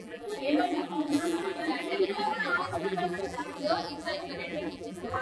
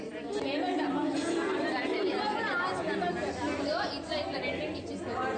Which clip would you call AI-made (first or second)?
first